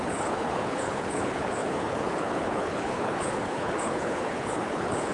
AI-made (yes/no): yes